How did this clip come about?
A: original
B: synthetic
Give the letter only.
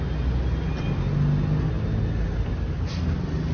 A